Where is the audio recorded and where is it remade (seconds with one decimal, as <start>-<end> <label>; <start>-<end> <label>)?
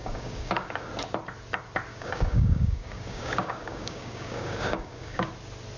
0.0-0.9 remade; 0.9-1.9 recorded; 1.9-5.3 remade; 5.3-5.8 recorded